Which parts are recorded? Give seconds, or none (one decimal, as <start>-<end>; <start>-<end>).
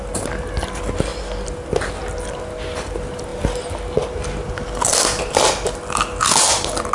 0.0-6.9